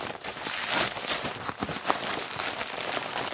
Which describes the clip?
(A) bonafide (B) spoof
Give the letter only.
A